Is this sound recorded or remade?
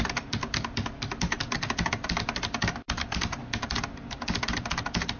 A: recorded